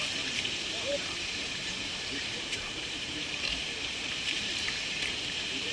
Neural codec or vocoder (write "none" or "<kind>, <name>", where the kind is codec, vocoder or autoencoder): vocoder, BigVGAN v2